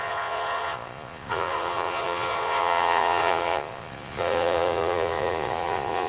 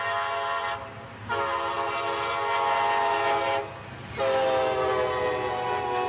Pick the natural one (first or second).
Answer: second